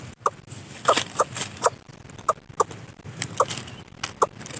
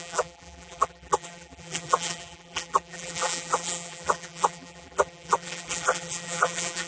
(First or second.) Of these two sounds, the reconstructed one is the second